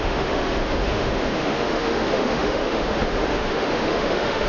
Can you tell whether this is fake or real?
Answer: fake